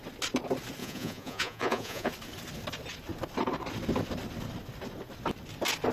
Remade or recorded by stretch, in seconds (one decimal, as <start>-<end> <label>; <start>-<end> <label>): 0.0-0.8 recorded; 0.8-2.1 remade; 2.1-5.9 recorded